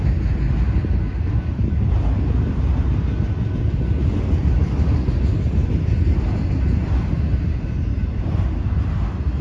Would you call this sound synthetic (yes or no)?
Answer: no